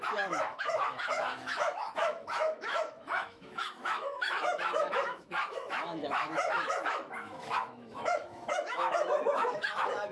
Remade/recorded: remade